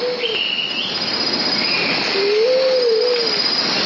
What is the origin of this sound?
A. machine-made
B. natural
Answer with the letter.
B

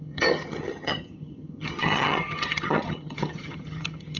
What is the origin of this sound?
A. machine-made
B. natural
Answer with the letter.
A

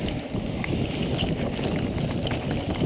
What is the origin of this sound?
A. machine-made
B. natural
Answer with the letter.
B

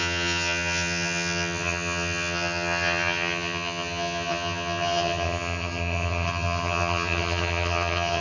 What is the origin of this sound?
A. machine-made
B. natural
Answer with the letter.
A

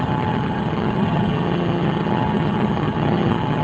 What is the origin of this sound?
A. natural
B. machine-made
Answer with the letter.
B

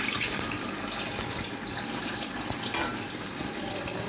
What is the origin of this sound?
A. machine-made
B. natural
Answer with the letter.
B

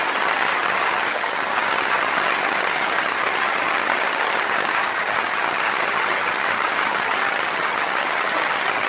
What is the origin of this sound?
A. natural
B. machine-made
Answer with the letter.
B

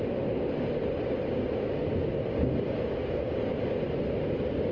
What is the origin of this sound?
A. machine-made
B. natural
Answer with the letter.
B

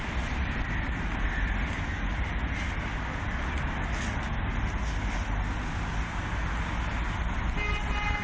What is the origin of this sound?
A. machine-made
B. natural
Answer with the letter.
B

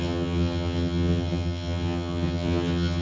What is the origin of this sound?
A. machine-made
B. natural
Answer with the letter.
A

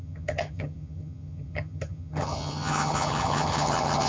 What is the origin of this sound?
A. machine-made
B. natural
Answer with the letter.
A